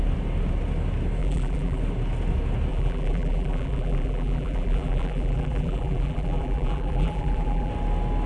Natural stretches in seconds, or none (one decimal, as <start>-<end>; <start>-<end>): 0.0-1.2; 1.8-2.7; 7.7-8.3